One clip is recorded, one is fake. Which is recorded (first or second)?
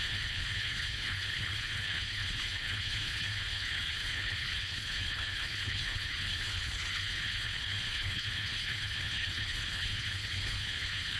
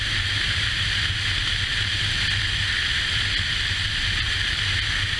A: second